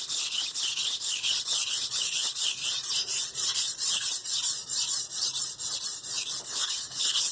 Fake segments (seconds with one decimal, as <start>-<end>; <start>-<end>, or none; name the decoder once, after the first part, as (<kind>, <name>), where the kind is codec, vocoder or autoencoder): 0.0-2.6 (codec, HILCodec); 6.4-7.3